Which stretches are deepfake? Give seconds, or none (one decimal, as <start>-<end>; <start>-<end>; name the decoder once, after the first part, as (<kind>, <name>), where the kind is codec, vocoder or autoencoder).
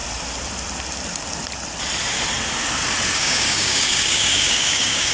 3.1-5.1 (codec, DAC)